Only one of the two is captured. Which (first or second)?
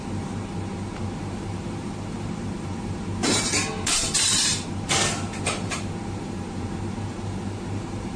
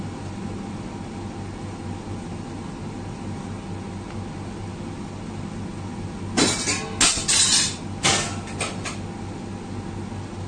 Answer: second